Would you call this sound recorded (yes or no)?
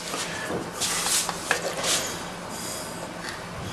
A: yes